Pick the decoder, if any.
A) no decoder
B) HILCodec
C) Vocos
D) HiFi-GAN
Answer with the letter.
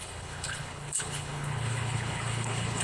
B